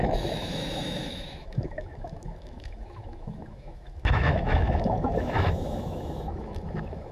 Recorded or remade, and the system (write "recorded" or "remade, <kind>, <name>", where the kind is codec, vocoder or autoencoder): remade, autoencoder, DAC-VAE